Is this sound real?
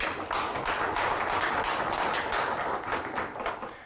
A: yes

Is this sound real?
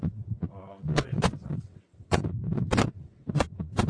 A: no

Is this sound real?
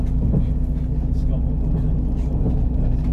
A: yes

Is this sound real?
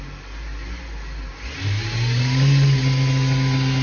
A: yes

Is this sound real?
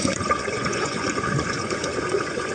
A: no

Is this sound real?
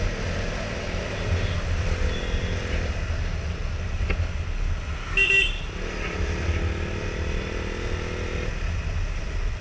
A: yes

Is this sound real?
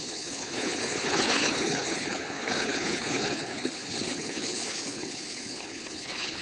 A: no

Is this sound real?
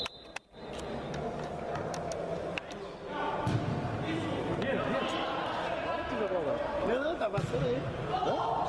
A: yes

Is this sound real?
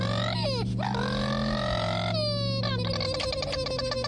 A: yes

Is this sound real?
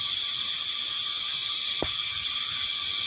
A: yes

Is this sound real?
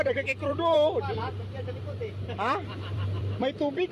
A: no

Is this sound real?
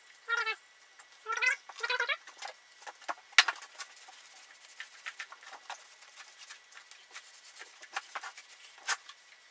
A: yes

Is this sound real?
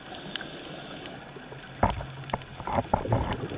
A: yes